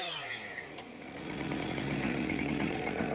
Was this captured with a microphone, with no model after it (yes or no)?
no